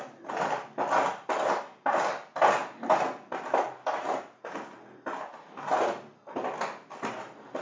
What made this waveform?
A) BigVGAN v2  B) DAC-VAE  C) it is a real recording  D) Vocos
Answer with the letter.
C